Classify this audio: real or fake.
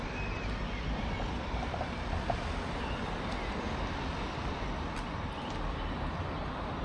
real